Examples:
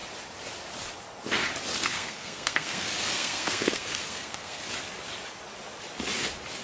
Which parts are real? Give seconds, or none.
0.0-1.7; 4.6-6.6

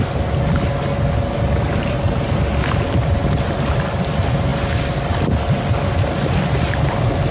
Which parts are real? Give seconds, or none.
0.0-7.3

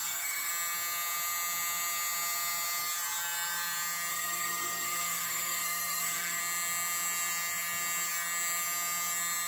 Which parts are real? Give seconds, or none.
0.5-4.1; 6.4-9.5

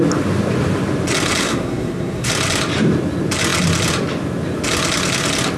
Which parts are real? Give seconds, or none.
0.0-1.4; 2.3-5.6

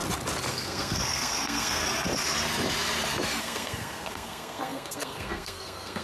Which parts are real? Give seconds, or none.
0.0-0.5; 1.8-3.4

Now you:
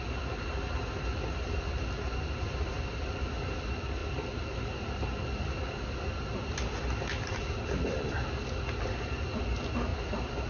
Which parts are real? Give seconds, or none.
0.0-10.5

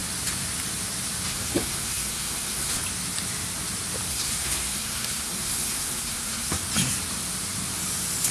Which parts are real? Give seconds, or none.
0.0-1.3; 2.8-4.1; 6.6-8.3

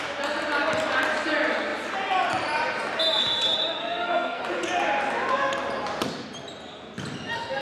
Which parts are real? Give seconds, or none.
0.0-3.8; 4.4-7.6